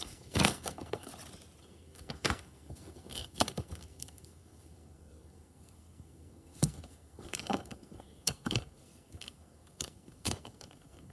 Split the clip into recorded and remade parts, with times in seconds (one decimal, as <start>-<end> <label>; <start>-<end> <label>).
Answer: 0.0-1.1 remade; 1.1-1.6 recorded; 1.6-11.1 remade